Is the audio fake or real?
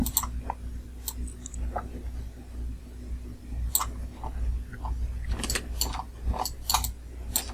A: real